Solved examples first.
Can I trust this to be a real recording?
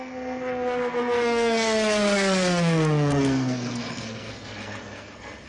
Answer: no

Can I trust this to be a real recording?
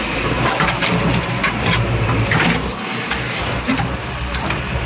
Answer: no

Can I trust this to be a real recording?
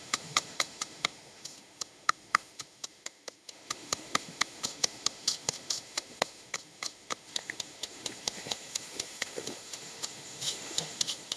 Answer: no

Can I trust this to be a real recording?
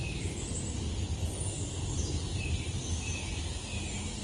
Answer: yes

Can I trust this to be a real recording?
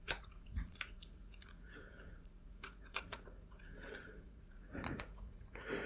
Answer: no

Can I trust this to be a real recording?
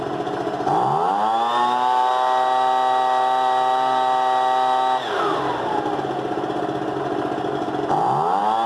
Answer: yes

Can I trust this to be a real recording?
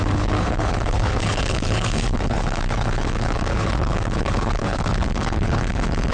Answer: no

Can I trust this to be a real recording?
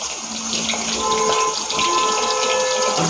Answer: yes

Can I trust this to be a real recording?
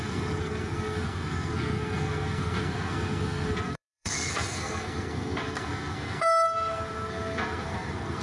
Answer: no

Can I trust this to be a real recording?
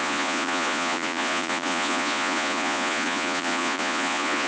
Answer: no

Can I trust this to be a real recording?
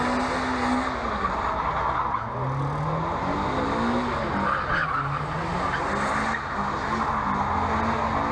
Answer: yes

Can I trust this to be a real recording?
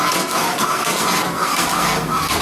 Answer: no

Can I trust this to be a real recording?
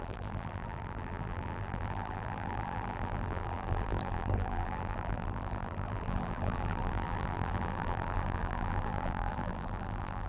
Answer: no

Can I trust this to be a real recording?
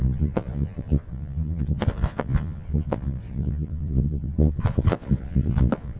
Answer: no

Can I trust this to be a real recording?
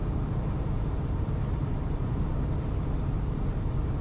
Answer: no